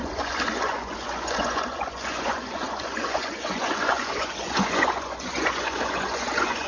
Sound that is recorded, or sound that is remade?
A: remade